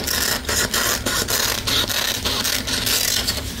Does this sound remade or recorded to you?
recorded